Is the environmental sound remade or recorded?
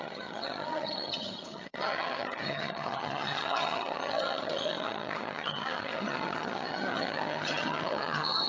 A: remade